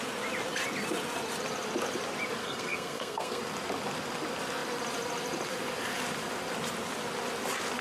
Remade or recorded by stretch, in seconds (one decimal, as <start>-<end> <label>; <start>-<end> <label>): 0.0-2.4 recorded; 2.4-3.4 remade; 3.4-7.8 recorded